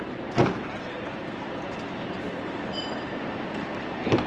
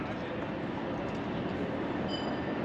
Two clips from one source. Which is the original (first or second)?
second